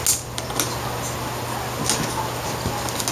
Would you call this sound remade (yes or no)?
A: no